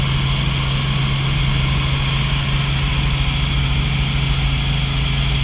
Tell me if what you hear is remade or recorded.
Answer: recorded